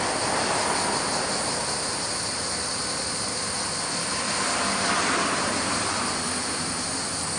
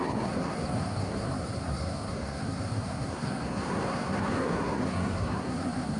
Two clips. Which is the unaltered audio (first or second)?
first